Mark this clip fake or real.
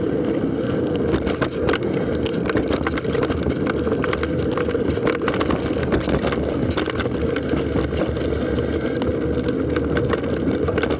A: real